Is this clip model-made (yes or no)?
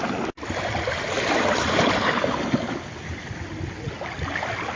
no